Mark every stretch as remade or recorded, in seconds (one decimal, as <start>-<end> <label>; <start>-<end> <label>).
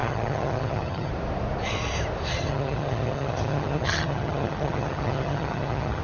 0.0-1.1 remade; 1.1-2.3 recorded; 2.3-6.0 remade